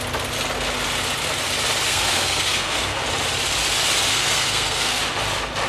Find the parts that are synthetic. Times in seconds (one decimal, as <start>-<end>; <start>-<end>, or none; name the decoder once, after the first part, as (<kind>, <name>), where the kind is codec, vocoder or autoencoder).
1.9-3.0 (codec, SNAC); 4.1-5.0